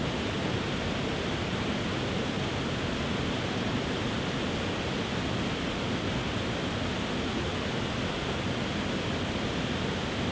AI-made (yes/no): no